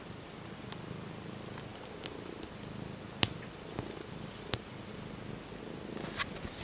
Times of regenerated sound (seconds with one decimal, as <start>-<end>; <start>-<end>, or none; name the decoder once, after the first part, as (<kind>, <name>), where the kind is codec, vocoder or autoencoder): none